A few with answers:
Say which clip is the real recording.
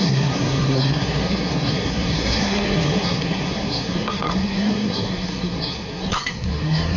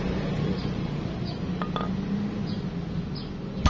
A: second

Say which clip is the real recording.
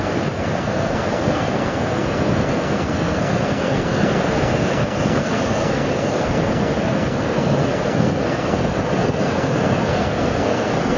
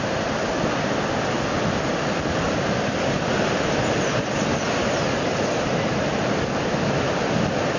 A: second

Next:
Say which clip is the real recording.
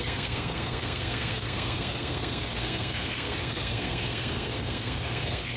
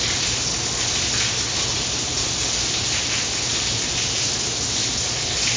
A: second